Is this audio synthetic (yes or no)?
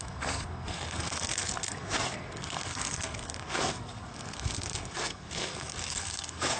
yes